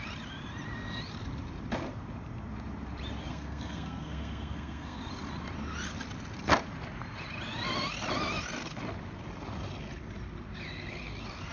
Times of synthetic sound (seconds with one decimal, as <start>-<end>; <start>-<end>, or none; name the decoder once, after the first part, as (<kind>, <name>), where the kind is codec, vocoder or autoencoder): 3.3-5.0 (codec, SNAC)